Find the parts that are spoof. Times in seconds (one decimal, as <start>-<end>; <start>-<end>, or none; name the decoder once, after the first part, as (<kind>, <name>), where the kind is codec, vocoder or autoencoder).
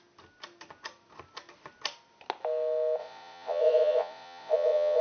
3.0-5.0 (vocoder, Vocos)